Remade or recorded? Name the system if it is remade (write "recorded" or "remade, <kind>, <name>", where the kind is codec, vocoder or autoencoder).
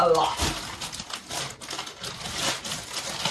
recorded